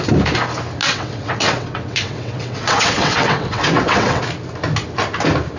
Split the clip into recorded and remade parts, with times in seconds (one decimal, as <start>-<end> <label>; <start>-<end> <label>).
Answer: 0.0-0.8 recorded; 0.8-4.2 remade; 4.2-5.6 recorded